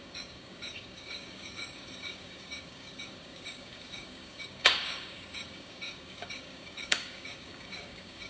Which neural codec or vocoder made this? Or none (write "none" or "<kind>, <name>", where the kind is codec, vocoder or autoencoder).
codec, DAC